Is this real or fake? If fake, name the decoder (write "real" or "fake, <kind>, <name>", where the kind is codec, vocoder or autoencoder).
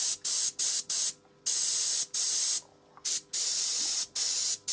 real